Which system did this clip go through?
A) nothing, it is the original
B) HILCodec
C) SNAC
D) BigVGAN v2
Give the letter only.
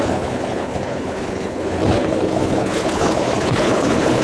B